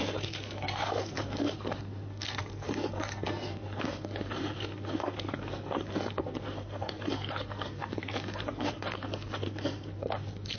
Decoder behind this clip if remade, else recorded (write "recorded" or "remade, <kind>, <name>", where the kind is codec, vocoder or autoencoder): remade, codec, SNAC